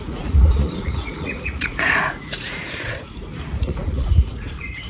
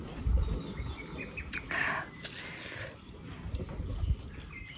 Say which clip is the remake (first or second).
first